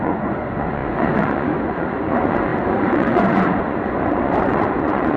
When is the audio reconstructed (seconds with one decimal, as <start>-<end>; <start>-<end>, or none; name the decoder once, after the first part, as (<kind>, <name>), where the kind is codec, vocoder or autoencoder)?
0.0-5.2 (vocoder, Vocos)